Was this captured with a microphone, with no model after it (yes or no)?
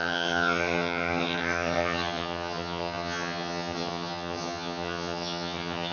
no